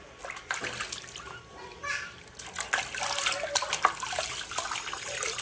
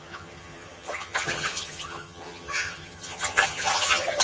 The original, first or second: first